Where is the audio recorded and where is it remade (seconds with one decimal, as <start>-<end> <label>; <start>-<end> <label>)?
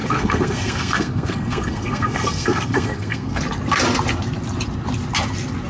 0.0-3.4 remade; 3.4-5.7 recorded